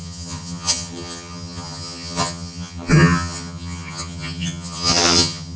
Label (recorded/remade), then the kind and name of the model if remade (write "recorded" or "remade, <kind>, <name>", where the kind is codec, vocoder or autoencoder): remade, vocoder, HiFi-GAN